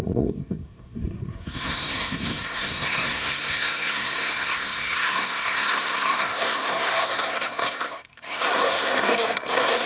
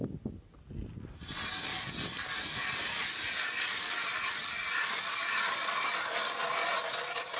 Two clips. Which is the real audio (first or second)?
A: second